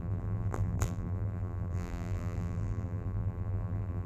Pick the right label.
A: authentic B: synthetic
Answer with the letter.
B